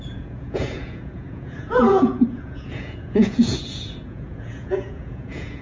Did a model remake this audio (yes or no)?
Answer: yes